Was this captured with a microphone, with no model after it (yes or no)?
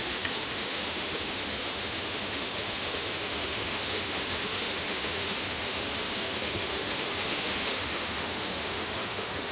no